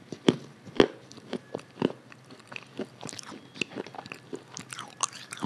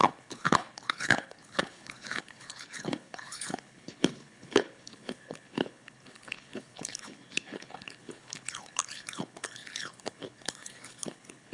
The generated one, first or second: second